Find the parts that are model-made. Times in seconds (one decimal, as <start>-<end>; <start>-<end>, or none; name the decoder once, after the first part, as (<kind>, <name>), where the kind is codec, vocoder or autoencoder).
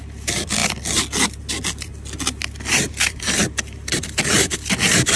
0.0-0.6 (vocoder, BigVGAN v2); 1.5-1.9; 2.7-5.2